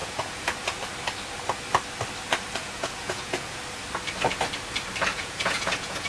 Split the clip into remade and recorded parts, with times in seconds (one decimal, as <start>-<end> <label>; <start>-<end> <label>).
0.0-0.8 remade; 0.8-2.6 recorded; 2.6-3.6 remade; 3.6-5.1 recorded; 5.1-6.1 remade

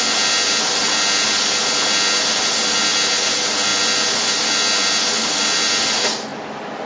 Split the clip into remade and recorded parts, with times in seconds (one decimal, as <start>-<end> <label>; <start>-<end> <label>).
0.0-6.9 recorded